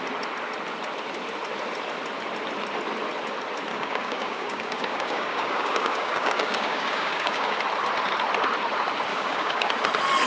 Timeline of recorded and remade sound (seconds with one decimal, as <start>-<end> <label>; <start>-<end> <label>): 0.0-3.7 recorded; 3.7-7.6 remade; 7.6-9.1 recorded; 9.1-9.7 remade; 9.7-10.3 recorded

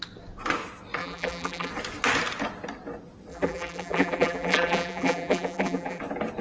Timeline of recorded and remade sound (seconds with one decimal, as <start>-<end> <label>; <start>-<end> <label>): 0.0-1.0 recorded; 1.0-1.7 remade; 1.7-3.3 recorded; 3.3-6.0 remade; 6.0-6.4 recorded

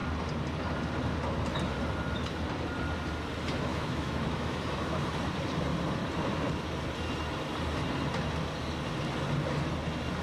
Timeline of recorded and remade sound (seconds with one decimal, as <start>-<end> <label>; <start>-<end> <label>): 0.0-3.7 recorded; 3.7-5.0 remade; 5.0-10.2 recorded

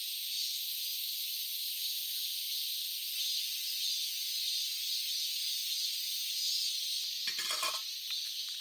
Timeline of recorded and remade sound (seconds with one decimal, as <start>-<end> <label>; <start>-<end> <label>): 0.0-8.6 recorded

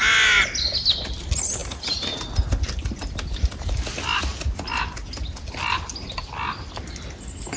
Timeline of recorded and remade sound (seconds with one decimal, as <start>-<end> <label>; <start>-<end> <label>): 0.0-7.6 recorded